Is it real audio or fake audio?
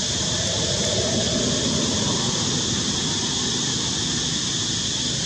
real